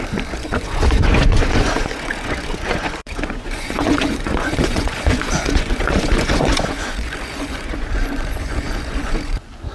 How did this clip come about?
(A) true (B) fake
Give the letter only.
B